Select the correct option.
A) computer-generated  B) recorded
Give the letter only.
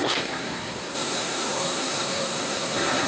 A